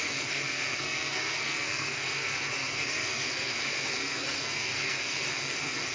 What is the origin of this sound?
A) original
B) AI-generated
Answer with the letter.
B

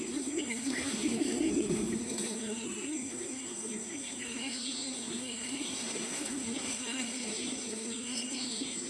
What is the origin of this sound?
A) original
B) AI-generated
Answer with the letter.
B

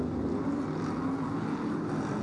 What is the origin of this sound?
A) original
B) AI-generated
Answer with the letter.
A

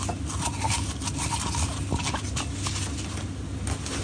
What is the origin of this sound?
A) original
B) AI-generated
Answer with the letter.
A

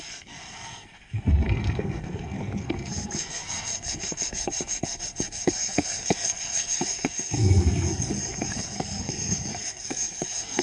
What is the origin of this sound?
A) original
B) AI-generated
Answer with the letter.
B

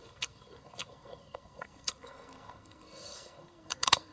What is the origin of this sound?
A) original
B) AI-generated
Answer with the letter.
B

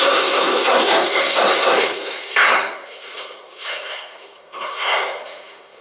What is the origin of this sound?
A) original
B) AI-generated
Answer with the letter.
B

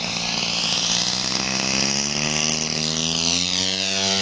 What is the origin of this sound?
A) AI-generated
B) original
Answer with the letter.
B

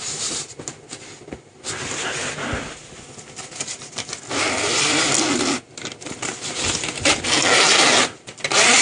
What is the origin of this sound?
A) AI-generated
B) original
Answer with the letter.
B